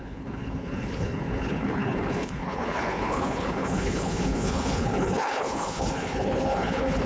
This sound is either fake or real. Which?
fake